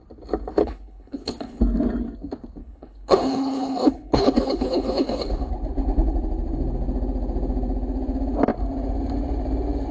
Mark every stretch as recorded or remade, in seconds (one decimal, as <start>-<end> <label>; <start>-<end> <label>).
0.0-0.6 recorded; 0.6-1.6 remade; 1.6-2.6 recorded; 2.6-5.3 remade; 5.3-9.9 recorded